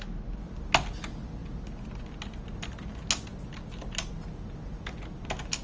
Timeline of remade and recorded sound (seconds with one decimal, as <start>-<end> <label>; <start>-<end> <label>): 0.0-5.6 recorded